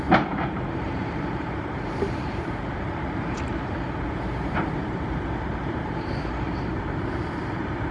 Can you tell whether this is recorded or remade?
remade